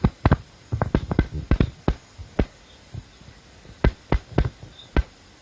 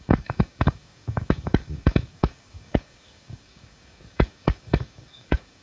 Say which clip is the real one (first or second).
first